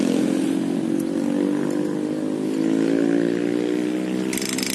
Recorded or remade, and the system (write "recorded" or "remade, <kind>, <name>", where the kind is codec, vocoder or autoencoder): recorded